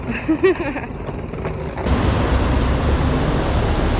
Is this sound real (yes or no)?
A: yes